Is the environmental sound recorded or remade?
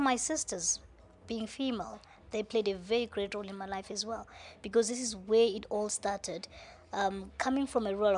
recorded